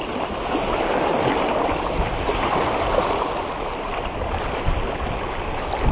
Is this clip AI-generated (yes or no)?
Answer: no